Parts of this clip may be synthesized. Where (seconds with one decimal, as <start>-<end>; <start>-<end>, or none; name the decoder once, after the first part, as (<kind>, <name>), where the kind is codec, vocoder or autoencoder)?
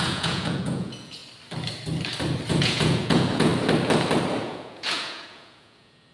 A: 0.0-1.2 (vocoder, Vocos); 2.5-3.5; 4.4-6.1